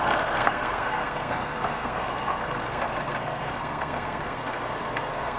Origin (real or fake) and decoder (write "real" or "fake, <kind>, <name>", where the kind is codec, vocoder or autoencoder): fake, codec, SNAC